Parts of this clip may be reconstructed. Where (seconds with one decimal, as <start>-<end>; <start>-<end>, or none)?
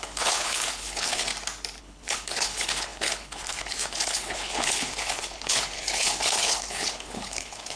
0.0-1.3; 1.8-7.8